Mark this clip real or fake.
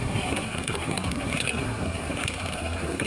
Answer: fake